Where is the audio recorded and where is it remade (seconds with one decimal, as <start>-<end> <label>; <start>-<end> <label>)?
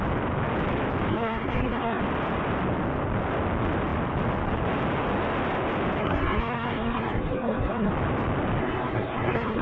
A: 0.0-1.1 recorded; 1.1-2.0 remade; 2.0-6.0 recorded; 6.0-7.9 remade; 7.9-8.6 recorded; 8.6-9.6 remade